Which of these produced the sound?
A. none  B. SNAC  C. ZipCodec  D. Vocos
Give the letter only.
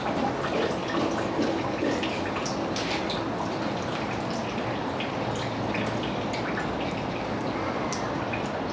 A